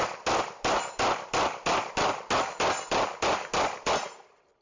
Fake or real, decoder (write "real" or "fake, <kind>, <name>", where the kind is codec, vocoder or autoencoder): real